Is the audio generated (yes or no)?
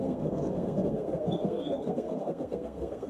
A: yes